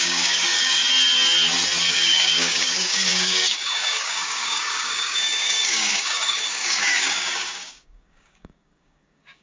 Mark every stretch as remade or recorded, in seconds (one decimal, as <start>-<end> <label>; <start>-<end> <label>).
0.0-0.8 remade; 0.8-1.9 recorded; 1.9-9.4 remade